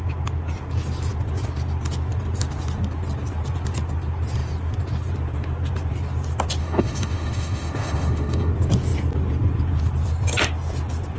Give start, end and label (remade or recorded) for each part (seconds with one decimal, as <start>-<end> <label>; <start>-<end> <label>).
0.0-6.6 recorded; 6.6-8.5 remade; 8.5-11.2 recorded